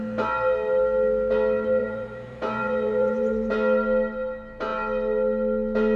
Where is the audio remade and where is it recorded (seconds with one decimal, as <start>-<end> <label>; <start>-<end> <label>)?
0.0-1.8 recorded; 1.8-3.5 remade; 3.5-6.0 recorded